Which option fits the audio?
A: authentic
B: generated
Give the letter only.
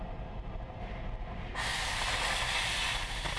A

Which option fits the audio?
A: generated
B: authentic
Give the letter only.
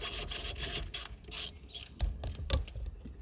B